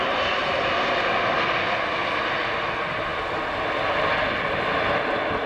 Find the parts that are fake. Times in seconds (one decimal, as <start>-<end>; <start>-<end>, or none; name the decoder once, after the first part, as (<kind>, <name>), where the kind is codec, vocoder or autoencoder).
none